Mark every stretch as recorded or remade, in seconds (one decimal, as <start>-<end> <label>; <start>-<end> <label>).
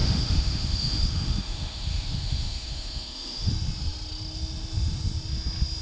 0.0-3.5 remade; 3.5-5.8 recorded